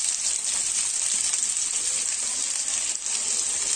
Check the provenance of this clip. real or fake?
real